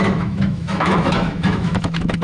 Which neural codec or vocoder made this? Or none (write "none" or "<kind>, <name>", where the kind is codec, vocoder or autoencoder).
autoencoder, DAC-VAE